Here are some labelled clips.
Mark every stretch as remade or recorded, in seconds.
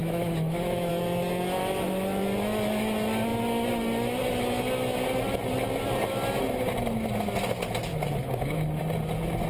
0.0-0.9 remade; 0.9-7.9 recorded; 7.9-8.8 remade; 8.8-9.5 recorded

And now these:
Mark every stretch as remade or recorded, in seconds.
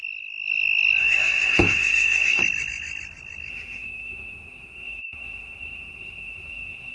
0.0-1.0 recorded; 1.0-2.4 remade; 2.4-3.5 recorded; 3.5-6.9 remade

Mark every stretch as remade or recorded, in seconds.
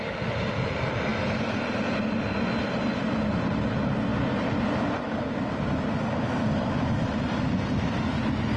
0.0-8.6 recorded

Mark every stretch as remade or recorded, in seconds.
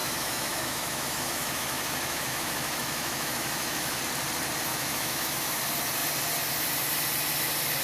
0.0-4.0 remade; 4.0-4.7 recorded; 4.7-5.6 remade; 5.6-7.8 recorded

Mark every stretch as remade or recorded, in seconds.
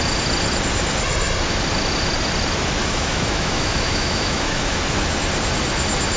0.0-2.8 recorded; 2.8-4.8 remade; 4.8-6.2 recorded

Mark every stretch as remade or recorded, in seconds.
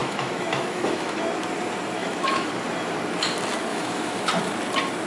0.0-1.2 remade; 1.2-2.0 recorded; 2.0-2.5 remade; 2.5-3.7 recorded; 3.7-4.3 remade; 4.3-5.1 recorded